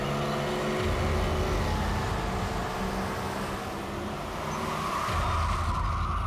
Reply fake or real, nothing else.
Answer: real